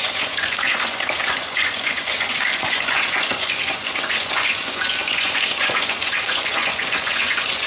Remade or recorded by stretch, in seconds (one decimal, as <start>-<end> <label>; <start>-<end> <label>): 0.0-7.7 remade